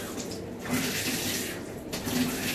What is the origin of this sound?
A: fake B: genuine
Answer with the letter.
B